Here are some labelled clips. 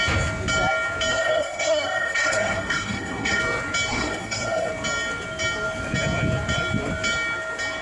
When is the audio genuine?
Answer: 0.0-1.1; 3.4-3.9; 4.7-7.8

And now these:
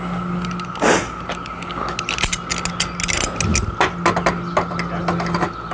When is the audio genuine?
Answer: 0.0-5.7